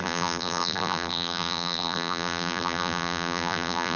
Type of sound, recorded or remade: remade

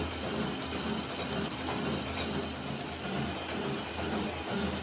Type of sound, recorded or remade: recorded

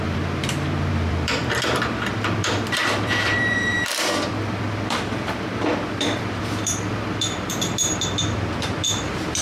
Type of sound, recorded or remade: remade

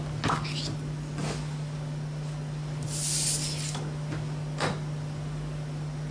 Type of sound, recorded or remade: recorded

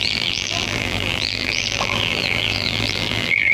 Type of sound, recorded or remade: remade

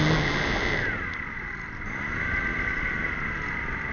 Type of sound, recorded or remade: remade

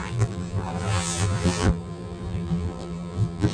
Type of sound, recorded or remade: remade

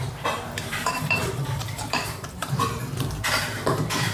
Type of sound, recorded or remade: remade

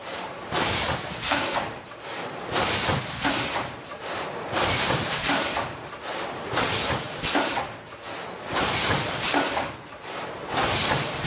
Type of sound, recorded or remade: remade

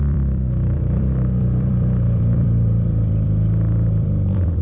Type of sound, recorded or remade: remade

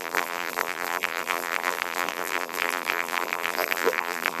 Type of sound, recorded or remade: remade